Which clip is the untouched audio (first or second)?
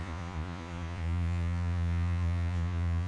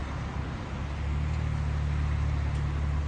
second